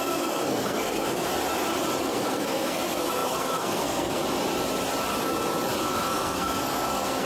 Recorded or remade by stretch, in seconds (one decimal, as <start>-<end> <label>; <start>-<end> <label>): 0.0-1.3 remade; 1.3-2.0 recorded; 2.0-4.2 remade; 4.2-5.8 recorded; 5.8-7.3 remade